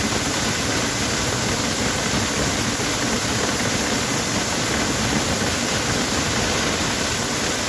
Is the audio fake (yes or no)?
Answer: no